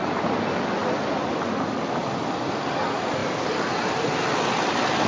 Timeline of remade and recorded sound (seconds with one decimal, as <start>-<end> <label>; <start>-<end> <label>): 0.0-5.1 recorded